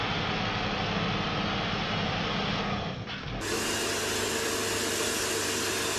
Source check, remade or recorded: recorded